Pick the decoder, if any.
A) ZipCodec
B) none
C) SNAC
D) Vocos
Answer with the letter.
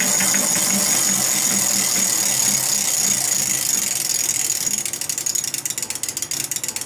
B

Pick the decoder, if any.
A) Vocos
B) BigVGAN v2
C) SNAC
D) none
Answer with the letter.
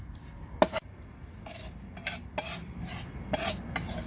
D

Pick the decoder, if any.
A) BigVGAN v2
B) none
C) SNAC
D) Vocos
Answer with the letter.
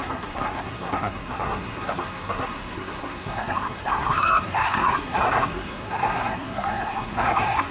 C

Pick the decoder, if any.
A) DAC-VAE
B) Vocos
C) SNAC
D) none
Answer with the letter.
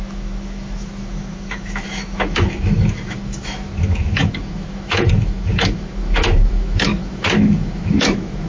A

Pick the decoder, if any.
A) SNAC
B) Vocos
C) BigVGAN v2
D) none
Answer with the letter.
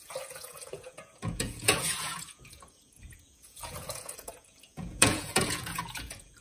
B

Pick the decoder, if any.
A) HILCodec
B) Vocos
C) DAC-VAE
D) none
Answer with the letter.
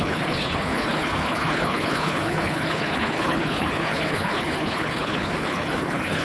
A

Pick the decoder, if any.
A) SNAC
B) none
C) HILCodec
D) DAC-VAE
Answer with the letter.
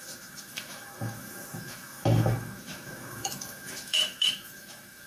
D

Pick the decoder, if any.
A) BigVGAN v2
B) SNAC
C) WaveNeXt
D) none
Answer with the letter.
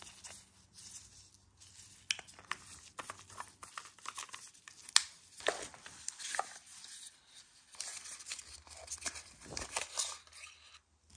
D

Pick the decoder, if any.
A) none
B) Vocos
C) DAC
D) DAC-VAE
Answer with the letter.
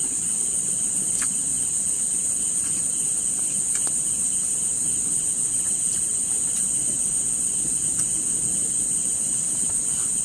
A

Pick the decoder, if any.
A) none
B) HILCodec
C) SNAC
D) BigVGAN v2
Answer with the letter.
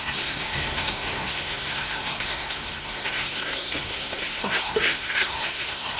C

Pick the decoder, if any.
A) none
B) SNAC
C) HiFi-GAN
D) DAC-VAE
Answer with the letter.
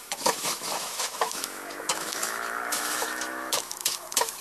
D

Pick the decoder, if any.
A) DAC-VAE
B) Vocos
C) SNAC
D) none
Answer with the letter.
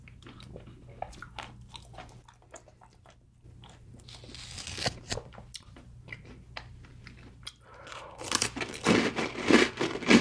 D